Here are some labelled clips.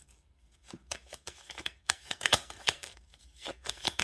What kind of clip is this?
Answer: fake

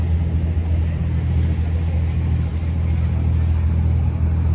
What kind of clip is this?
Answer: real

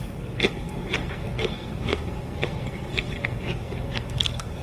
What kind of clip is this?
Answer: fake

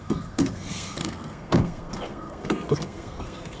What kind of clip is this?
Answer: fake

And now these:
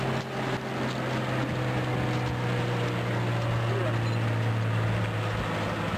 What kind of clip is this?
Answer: real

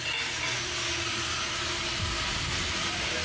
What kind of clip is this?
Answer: real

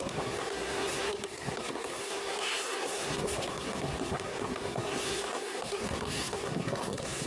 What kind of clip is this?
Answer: fake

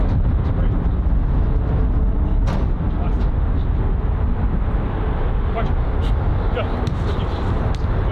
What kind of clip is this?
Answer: real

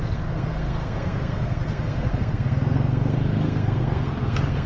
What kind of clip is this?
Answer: fake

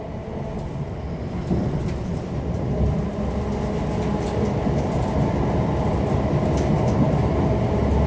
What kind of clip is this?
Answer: real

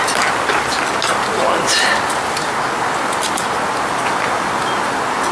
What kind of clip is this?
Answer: real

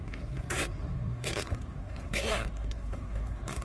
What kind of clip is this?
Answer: fake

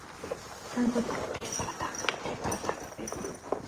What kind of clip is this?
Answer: real